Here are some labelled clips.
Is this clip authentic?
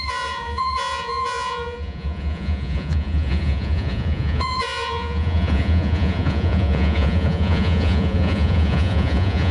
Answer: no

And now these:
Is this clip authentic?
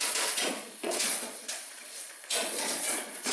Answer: no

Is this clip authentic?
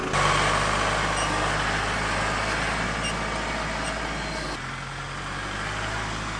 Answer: yes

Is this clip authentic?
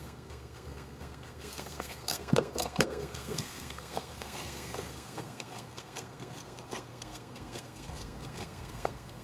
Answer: no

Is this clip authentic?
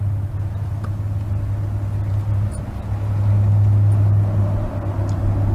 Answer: yes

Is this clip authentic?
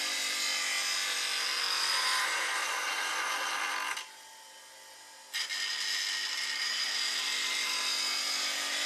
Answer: yes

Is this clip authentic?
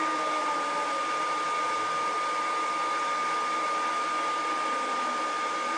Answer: yes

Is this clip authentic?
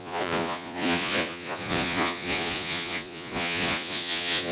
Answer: no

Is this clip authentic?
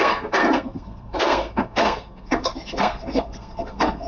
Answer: no